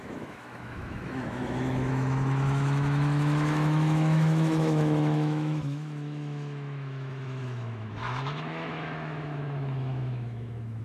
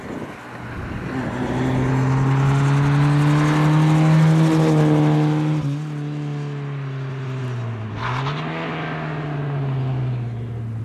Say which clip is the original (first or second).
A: second